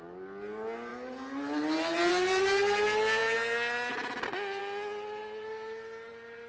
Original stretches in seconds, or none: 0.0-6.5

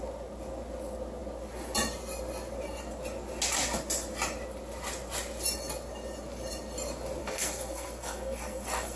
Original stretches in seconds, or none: 0.0-7.2

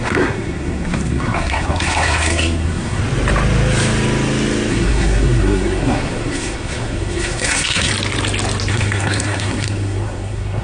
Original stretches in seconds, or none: 3.0-4.7; 7.9-8.7

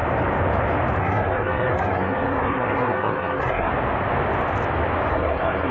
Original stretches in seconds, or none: 0.0-1.0; 3.7-5.1

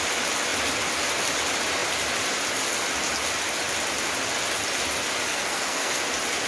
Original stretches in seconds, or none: 0.0-5.3; 6.0-6.5